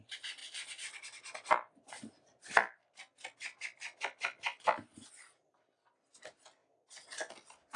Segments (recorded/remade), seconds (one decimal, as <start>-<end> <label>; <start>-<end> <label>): 0.0-7.8 recorded